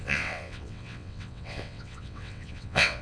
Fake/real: fake